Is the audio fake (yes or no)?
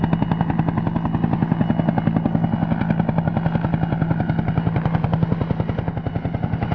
no